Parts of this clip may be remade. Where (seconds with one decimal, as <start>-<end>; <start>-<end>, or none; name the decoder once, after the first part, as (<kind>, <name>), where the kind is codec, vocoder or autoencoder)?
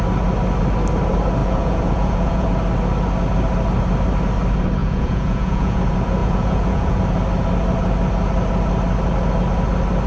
1.4-2.5 (vocoder, Vocos); 4.8-5.8; 6.2-7.0